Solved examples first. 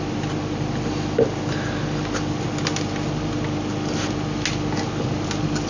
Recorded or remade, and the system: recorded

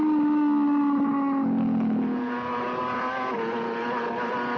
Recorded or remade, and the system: recorded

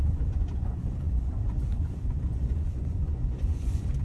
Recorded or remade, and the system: remade, vocoder, Vocos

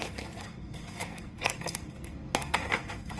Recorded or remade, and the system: remade, codec, SNAC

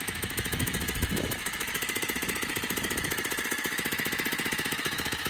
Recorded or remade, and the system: remade, autoencoder, DAC-VAE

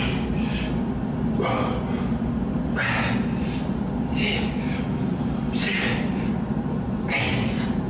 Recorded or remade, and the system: recorded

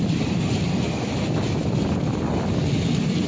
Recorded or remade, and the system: recorded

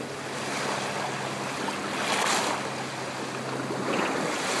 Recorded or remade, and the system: recorded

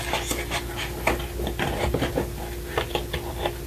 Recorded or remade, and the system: recorded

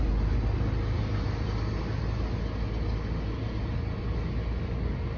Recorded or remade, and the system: recorded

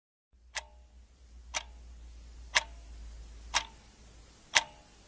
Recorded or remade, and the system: recorded